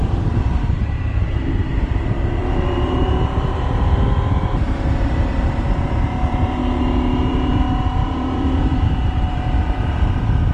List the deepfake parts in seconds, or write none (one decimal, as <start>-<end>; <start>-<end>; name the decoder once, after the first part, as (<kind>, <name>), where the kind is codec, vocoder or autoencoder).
0.0-6.6 (vocoder, BigVGAN v2); 7.3-10.5